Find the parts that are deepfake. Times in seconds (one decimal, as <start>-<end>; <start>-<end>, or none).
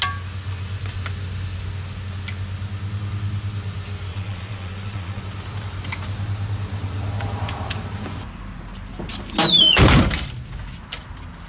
4.1-5.2